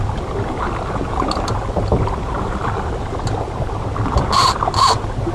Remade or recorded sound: recorded